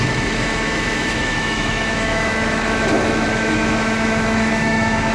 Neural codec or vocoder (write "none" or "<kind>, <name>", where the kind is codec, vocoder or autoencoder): autoencoder, DAC-VAE